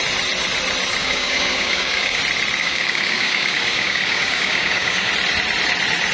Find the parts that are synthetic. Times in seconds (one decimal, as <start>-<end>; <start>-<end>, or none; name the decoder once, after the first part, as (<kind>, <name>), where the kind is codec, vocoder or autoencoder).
1.0-2.2 (codec, DAC); 2.6-5.1